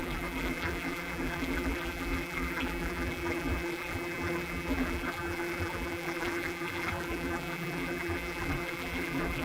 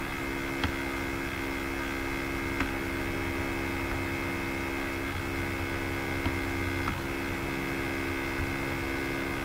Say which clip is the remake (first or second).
first